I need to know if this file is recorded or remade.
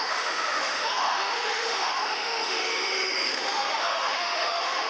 remade